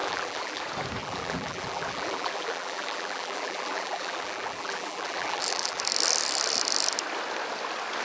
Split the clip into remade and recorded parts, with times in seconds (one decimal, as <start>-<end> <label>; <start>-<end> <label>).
0.0-0.6 remade; 0.6-1.0 recorded; 1.0-5.8 remade; 5.8-8.0 recorded